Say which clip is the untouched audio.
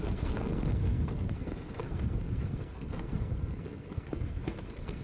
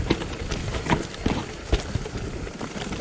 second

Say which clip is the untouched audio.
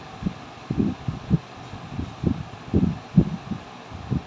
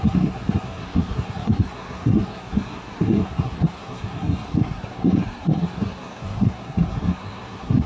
first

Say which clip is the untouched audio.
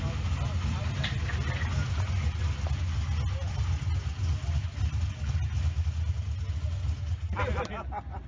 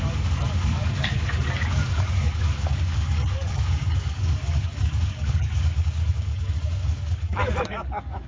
first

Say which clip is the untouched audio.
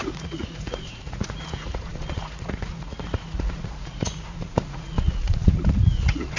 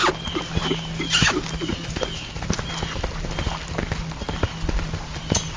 second